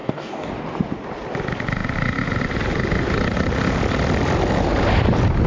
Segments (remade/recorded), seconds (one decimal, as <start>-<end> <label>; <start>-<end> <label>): 0.0-0.5 remade; 0.5-5.5 recorded